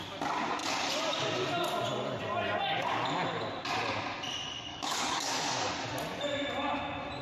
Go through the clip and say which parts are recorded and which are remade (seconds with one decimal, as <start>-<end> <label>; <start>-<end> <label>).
0.0-4.7 recorded; 4.7-5.7 remade; 5.7-7.2 recorded